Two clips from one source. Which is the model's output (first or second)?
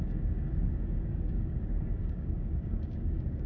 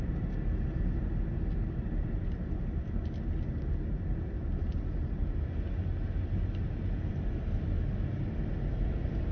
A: first